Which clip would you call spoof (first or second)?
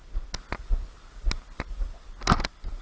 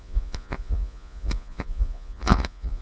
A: second